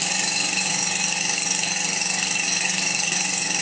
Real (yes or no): no